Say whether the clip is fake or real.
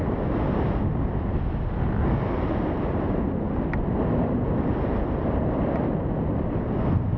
real